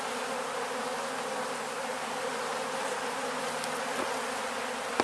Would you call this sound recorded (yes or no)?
yes